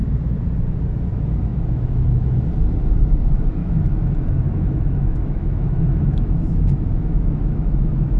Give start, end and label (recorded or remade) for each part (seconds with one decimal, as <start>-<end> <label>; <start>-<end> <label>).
0.0-1.5 recorded; 1.5-2.5 remade; 2.5-3.6 recorded; 3.6-8.2 remade

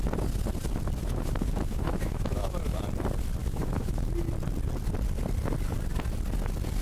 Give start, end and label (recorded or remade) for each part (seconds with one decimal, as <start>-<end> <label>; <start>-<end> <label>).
0.0-1.0 recorded; 1.0-2.8 remade; 2.8-3.4 recorded; 3.4-4.1 remade; 4.1-6.8 recorded